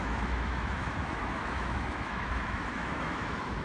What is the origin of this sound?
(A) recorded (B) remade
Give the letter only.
B